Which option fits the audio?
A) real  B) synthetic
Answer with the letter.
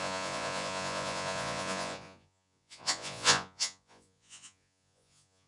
B